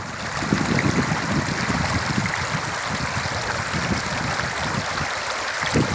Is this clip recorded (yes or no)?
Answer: yes